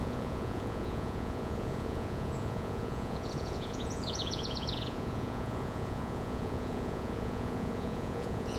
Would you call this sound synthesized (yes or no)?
yes